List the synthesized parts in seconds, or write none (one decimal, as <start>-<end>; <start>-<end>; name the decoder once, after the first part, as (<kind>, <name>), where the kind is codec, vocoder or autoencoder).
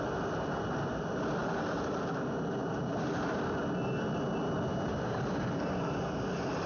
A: 1.4-2.0 (vocoder, BigVGAN v2); 2.6-3.3; 4.7-5.9